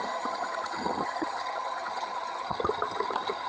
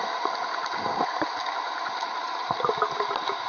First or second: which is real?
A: second